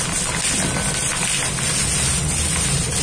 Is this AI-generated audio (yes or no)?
no